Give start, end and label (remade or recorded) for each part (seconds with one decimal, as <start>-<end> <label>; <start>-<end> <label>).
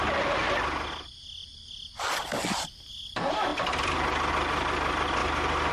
0.0-5.7 recorded